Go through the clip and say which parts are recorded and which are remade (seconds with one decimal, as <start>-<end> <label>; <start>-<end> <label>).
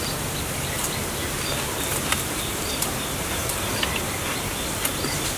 0.0-1.9 recorded; 1.9-3.7 remade; 3.7-5.4 recorded